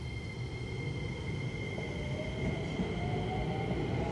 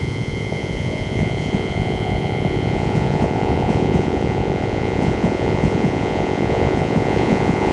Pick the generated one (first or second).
second